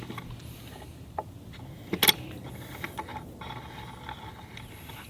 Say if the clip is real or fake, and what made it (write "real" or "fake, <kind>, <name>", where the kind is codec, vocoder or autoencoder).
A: real